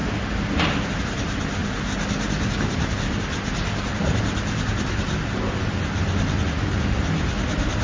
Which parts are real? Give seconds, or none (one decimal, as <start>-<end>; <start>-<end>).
1.0-7.8